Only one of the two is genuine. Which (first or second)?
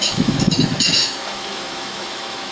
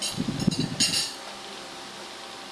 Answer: second